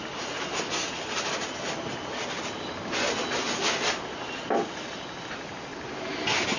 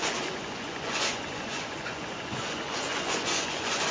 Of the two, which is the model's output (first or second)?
second